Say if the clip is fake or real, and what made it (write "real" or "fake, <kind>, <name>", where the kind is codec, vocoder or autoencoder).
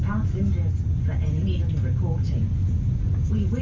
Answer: real